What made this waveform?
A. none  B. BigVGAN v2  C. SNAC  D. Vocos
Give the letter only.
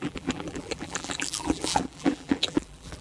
B